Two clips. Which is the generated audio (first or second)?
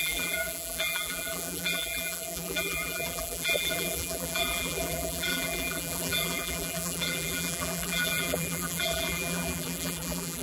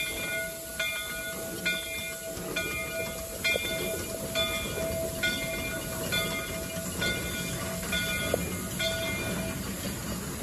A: first